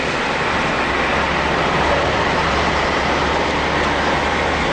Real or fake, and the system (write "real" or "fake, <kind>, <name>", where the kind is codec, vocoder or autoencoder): real